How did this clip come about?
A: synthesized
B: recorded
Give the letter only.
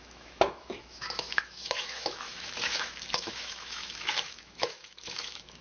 A